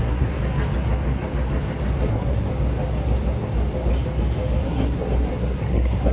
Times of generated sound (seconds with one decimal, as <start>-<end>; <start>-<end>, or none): 0.0-0.4; 2.1-2.5; 4.6-6.1